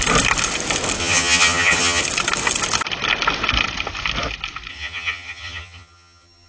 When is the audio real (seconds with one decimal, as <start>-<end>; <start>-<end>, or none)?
0.0-1.0; 2.0-4.7